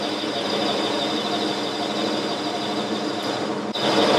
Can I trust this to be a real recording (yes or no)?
yes